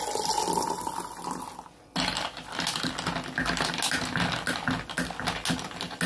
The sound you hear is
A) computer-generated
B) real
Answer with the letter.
B